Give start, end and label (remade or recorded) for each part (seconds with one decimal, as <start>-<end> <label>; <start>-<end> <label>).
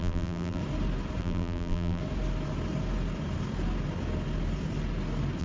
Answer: 0.0-0.6 remade; 0.6-1.2 recorded; 1.2-2.0 remade; 2.0-5.4 recorded